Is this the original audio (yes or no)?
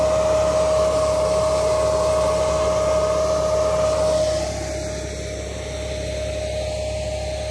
yes